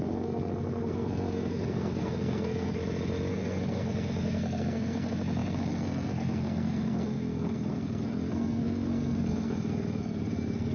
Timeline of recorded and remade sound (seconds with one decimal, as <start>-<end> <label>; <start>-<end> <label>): 0.0-2.8 remade; 2.8-3.3 recorded; 3.3-10.7 remade